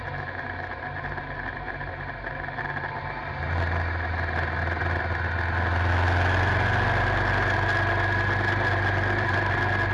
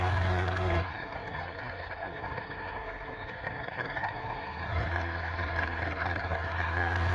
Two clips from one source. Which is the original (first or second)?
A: first